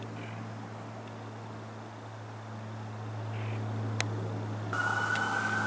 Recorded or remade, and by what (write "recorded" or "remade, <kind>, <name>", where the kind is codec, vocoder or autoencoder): recorded